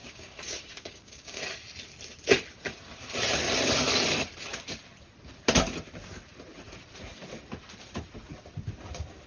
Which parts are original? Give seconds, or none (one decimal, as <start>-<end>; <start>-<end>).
1.4-9.3